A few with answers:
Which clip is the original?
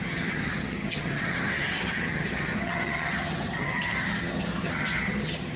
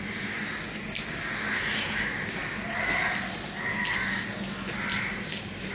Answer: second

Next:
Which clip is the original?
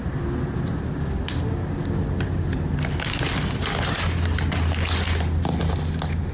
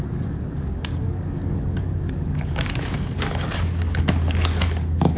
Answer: first